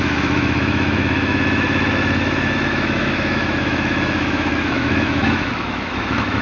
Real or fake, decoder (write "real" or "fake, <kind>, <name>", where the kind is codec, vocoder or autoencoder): fake, autoencoder, DAC-VAE